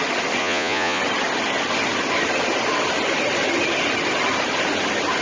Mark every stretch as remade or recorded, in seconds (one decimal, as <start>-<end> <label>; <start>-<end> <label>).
0.0-0.4 recorded; 0.4-1.0 remade; 1.0-5.2 recorded